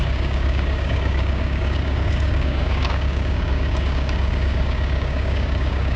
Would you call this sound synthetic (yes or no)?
yes